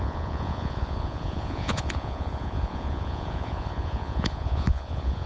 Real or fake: fake